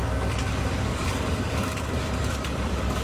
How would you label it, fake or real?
fake